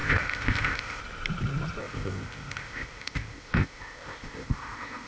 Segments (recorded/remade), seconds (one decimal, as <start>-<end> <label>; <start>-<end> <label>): 0.0-1.0 remade; 1.0-1.8 recorded; 1.8-5.1 remade